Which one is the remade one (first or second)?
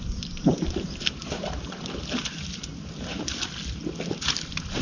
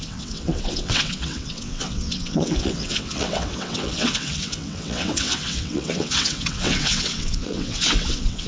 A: second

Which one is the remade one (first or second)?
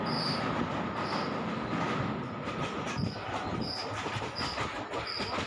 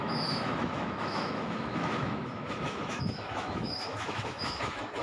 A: second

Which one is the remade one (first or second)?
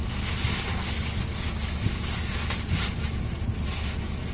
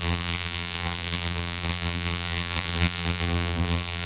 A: second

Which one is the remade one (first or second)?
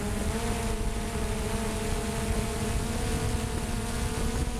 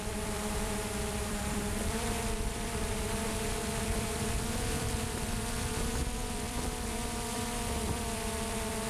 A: second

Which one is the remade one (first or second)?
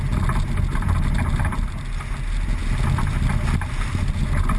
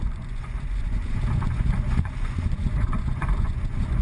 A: second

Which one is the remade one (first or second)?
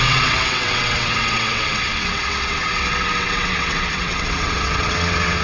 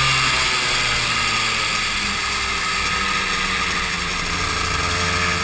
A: first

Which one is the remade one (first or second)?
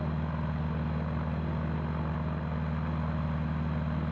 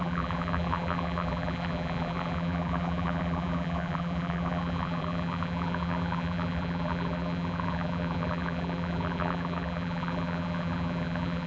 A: second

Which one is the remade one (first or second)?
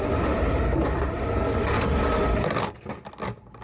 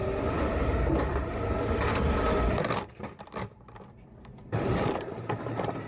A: second